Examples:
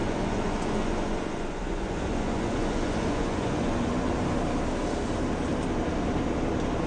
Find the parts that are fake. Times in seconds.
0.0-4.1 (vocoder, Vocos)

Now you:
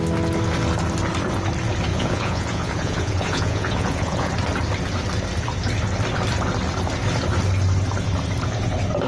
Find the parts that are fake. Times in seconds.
1.9-4.3 (vocoder, Vocos)

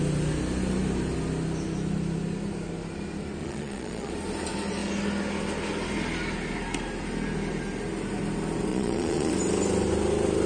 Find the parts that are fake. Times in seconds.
3.4-4.1 (vocoder, Vocos); 8.7-9.3

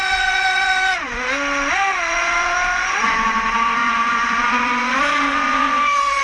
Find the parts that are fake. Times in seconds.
0.0-6.2 (vocoder, Vocos)

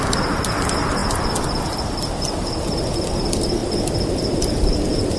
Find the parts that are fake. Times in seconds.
none

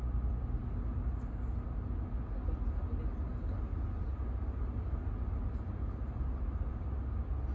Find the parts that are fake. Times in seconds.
none